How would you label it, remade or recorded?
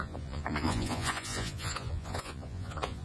remade